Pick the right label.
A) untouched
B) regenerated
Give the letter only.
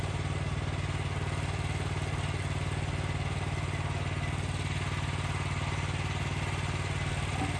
A